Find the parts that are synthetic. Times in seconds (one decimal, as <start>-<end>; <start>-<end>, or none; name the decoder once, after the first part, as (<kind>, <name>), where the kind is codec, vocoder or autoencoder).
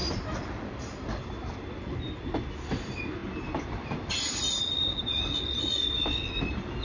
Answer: none